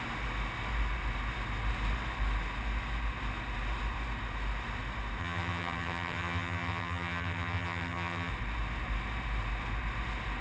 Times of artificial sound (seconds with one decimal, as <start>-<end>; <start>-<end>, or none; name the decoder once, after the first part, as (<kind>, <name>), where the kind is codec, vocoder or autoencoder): 5.2-8.3 (vocoder, HiFi-GAN)